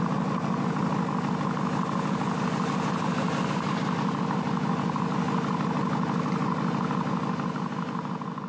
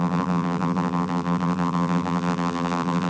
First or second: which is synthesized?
second